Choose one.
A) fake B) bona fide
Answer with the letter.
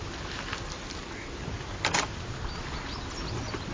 B